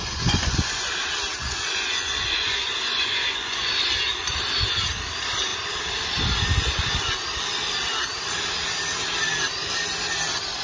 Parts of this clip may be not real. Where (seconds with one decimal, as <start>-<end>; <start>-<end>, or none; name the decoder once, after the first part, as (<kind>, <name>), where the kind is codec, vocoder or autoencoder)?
0.0-0.9 (vocoder, Vocos); 1.4-3.7